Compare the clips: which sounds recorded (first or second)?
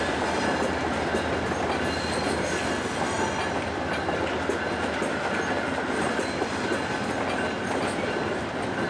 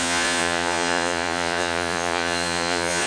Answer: first